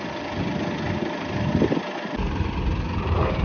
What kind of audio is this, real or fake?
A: real